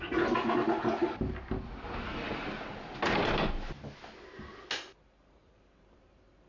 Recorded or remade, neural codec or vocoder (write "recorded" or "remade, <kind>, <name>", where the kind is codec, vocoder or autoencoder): recorded